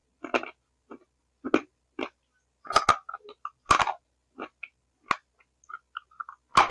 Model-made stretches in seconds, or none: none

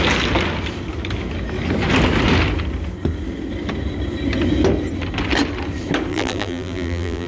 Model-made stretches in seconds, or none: 6.1-7.3 (vocoder, BigVGAN v2)

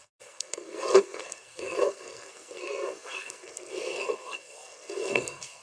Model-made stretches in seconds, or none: 0.0-5.6 (codec, SNAC)

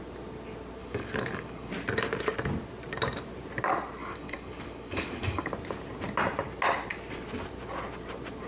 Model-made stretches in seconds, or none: 0.8-1.7 (codec, DAC); 4.0-5.5

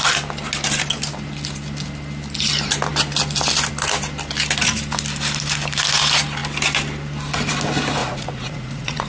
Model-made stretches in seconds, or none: 8.0-9.1 (vocoder, Vocos)

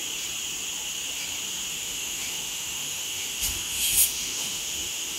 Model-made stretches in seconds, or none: 1.7-5.2 (autoencoder, DAC-VAE)

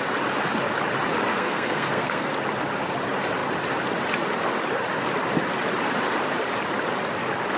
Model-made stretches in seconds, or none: 1.3-2.3 (codec, SNAC)

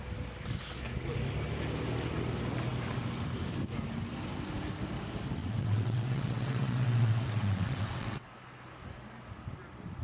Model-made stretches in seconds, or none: 5.4-8.3 (vocoder, WaveNeXt)